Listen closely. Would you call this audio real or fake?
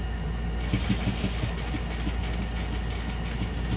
real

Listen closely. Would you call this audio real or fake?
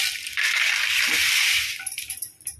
fake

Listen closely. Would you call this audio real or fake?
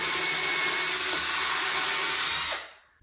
real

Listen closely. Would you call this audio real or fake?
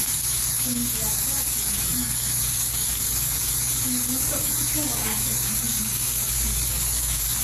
fake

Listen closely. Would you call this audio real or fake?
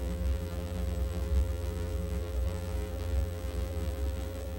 fake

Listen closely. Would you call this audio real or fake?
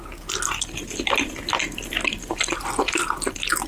real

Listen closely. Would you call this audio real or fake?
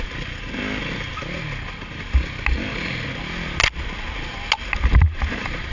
real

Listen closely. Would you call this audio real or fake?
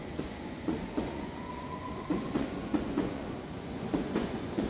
fake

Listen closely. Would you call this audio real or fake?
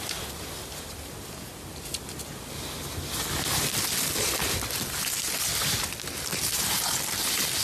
real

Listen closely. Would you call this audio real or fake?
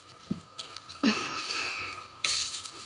fake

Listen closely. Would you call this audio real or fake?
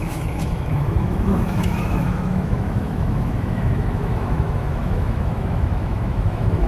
fake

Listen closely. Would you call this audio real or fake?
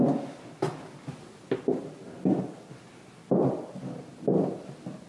real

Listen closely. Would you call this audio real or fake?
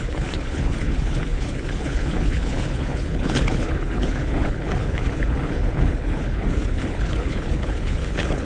fake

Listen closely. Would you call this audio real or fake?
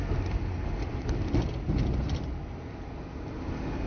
real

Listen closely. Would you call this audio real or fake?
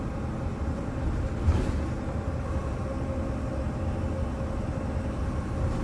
real